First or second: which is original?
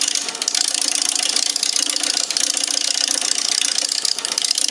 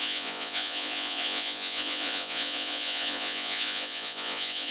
first